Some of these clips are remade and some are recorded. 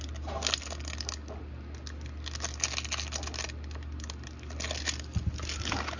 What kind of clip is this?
recorded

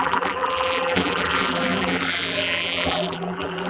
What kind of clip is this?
remade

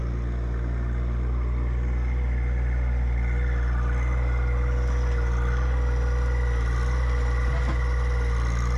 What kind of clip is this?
recorded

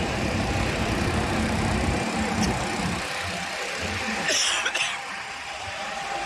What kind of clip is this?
remade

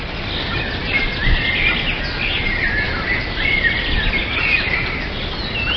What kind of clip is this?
recorded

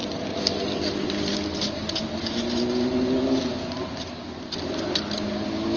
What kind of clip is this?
recorded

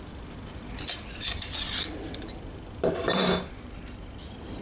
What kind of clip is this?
recorded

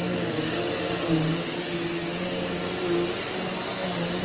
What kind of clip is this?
recorded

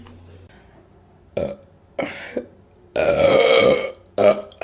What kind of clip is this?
recorded